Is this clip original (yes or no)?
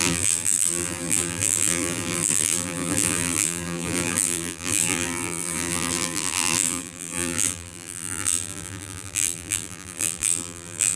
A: no